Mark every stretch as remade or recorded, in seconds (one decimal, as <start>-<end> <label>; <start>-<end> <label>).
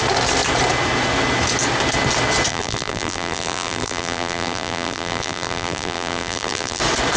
0.0-2.5 recorded; 2.5-6.8 remade; 6.8-7.2 recorded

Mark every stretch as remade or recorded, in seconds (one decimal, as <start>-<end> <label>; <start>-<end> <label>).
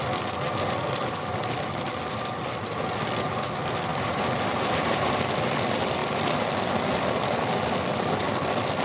0.0-3.9 recorded; 3.9-5.2 remade; 5.2-8.8 recorded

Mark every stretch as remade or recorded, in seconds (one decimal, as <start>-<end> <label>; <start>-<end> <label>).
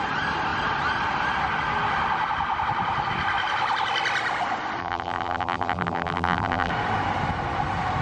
0.0-4.8 recorded; 4.8-6.7 remade; 6.7-8.0 recorded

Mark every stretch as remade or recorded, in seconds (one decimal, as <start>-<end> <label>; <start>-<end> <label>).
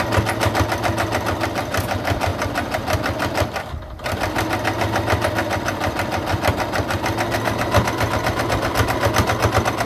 0.0-9.9 recorded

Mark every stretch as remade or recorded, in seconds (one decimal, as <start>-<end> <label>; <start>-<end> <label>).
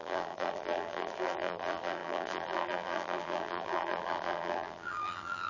0.0-5.5 remade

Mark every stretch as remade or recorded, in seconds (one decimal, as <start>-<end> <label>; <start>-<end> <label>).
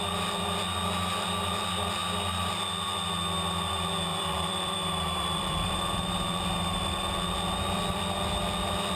0.0-4.1 recorded; 4.1-6.4 remade; 6.4-8.9 recorded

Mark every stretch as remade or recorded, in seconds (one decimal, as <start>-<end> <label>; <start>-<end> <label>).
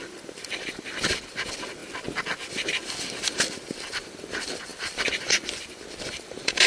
0.0-1.8 remade; 1.8-2.5 recorded; 2.5-6.7 remade